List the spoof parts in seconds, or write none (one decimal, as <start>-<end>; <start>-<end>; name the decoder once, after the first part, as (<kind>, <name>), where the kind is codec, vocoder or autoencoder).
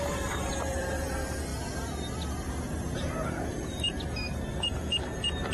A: 0.0-5.5 (vocoder, BigVGAN v2)